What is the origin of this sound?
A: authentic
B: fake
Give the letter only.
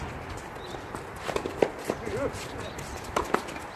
A